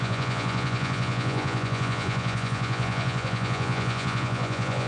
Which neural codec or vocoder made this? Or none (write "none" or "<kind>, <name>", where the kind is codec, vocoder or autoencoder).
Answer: vocoder, Vocos